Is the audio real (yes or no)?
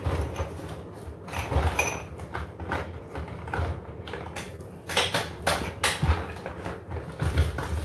yes